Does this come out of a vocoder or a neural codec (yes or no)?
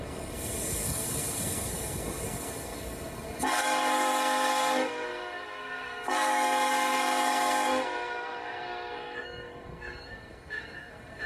yes